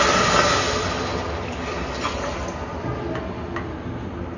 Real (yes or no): yes